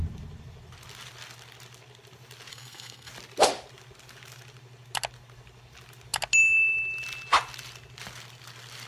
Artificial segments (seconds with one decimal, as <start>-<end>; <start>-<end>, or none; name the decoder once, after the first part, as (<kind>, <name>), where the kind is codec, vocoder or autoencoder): 2.5-3.1 (codec, SNAC)